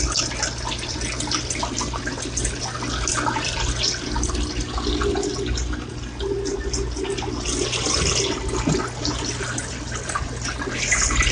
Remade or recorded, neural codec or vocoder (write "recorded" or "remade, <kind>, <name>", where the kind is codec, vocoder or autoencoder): recorded